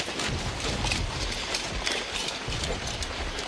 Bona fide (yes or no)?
no